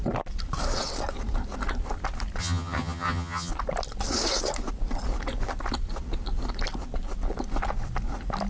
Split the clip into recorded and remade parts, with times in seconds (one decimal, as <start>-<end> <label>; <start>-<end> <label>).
0.0-2.4 recorded; 2.4-3.5 remade; 3.5-8.5 recorded